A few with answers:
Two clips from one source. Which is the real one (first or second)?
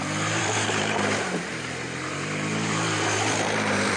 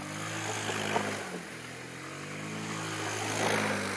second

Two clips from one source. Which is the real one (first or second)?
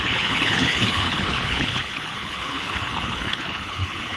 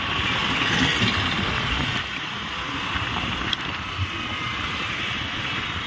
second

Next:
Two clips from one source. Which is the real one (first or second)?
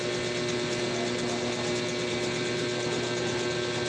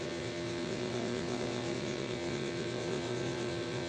first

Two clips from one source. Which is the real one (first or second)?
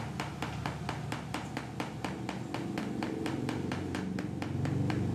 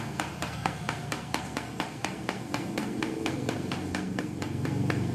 first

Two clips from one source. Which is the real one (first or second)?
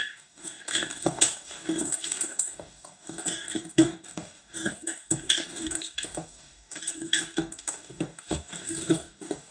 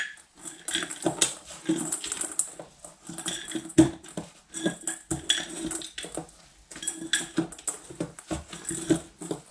second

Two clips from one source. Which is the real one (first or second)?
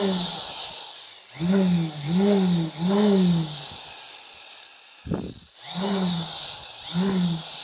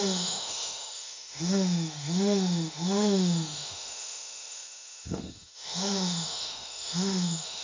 first